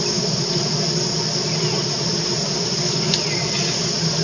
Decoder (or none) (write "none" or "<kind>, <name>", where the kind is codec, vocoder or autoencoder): none